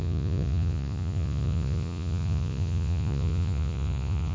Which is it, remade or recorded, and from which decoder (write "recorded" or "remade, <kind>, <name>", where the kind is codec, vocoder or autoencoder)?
remade, vocoder, Vocos